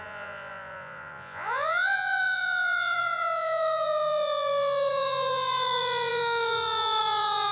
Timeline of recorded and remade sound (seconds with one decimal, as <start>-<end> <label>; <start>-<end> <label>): 0.0-7.5 remade